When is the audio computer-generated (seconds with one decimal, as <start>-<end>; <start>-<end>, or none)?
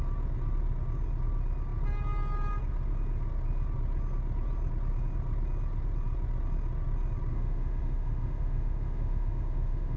7.3-10.0